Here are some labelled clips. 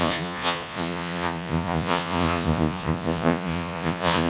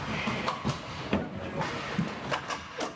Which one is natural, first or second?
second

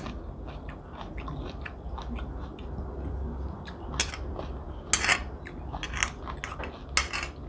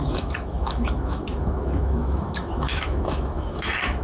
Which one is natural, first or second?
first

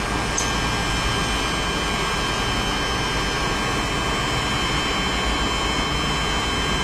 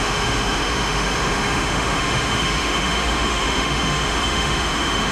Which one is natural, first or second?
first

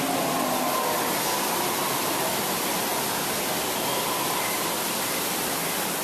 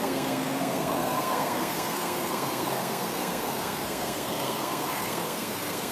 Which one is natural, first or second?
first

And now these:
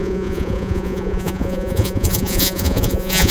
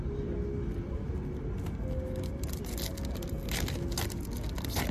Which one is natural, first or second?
second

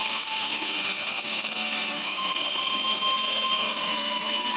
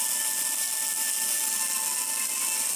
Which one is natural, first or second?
second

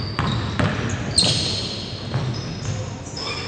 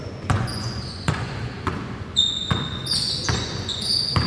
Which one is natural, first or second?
first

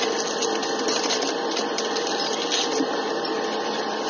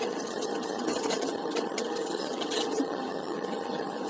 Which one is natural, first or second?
first